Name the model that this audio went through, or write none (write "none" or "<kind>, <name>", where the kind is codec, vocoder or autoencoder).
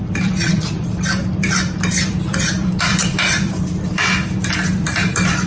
vocoder, BigVGAN v2